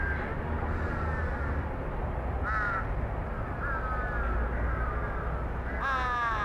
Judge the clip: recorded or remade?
recorded